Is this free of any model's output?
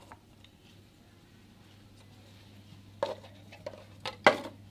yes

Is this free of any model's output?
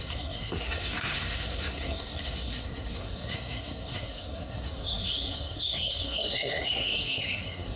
no